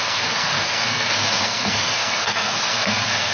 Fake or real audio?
fake